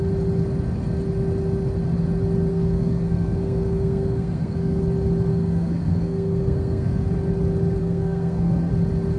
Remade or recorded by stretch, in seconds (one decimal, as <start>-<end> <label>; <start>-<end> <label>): 0.0-2.5 recorded; 2.5-4.8 remade; 4.8-5.3 recorded; 5.3-7.1 remade; 7.1-7.8 recorded; 7.8-8.7 remade; 8.7-9.2 recorded